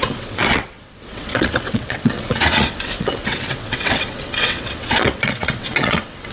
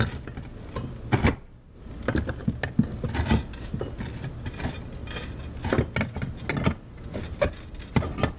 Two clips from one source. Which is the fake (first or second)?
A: first